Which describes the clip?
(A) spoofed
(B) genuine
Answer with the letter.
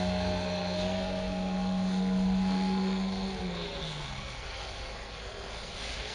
A